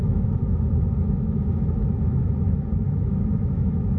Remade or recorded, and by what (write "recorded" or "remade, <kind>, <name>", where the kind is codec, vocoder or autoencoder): remade, autoencoder, DAC-VAE